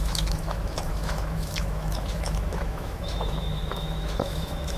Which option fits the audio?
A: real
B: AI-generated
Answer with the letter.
B